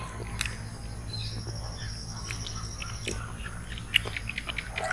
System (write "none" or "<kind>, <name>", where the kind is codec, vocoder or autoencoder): none